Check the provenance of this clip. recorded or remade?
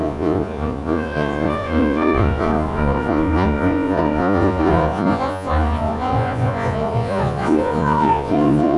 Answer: remade